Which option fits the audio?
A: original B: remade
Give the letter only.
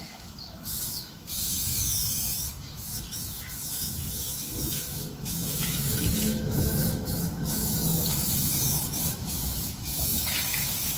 B